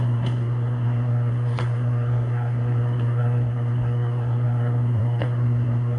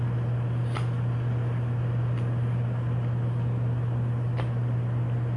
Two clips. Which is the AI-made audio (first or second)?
first